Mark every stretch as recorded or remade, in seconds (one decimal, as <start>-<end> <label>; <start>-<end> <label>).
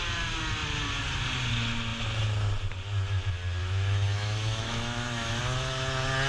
0.0-3.6 recorded; 3.6-5.4 remade; 5.4-6.3 recorded